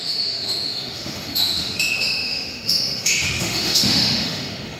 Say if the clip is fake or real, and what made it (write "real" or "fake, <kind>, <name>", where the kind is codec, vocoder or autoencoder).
fake, autoencoder, DAC-VAE